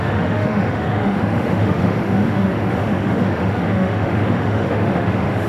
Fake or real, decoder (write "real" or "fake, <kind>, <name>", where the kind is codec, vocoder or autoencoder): fake, autoencoder, DAC-VAE